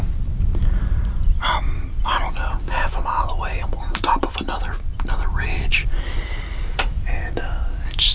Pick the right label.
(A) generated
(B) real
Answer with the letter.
A